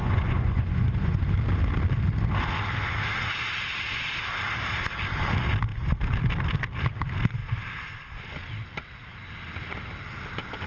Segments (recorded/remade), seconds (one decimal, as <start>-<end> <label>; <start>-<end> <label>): 0.0-1.2 remade; 1.2-10.7 recorded